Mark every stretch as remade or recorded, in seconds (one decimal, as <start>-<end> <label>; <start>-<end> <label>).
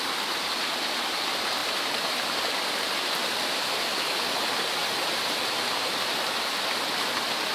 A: 0.0-1.6 recorded; 1.6-3.5 remade; 3.5-7.5 recorded